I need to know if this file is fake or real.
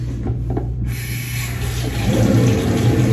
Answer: real